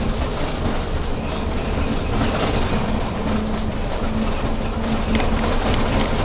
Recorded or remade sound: recorded